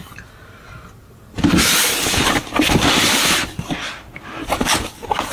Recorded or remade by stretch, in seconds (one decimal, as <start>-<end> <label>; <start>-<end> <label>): 0.0-5.3 recorded